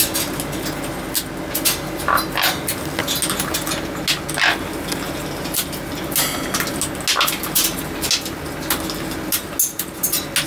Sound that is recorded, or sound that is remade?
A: recorded